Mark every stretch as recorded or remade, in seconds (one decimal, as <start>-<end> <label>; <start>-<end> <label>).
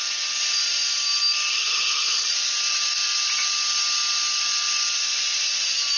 0.0-1.5 recorded; 1.5-2.3 remade; 2.3-6.0 recorded